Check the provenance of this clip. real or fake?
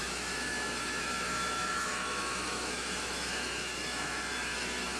fake